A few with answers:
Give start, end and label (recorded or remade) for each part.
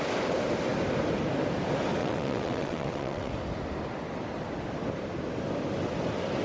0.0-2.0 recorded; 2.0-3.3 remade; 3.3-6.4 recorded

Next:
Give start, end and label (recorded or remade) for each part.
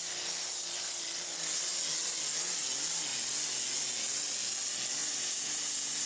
0.0-5.0 recorded; 5.0-6.1 remade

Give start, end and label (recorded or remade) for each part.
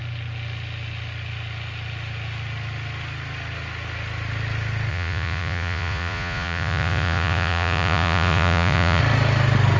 0.0-4.9 recorded; 4.9-9.0 remade; 9.0-9.8 recorded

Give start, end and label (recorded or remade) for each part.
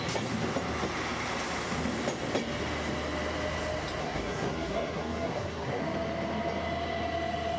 0.0-4.0 recorded; 4.0-5.8 remade; 5.8-7.6 recorded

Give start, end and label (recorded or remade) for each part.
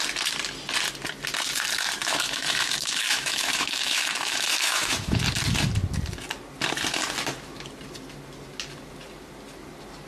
0.0-2.0 recorded; 2.0-5.2 remade; 5.2-10.1 recorded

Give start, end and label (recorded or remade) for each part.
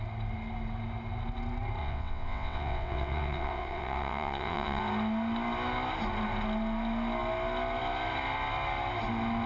0.0-1.8 recorded; 1.8-4.8 remade; 4.8-9.5 recorded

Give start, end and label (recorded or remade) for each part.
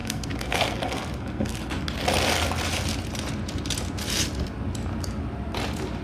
0.0-1.8 remade; 1.8-6.0 recorded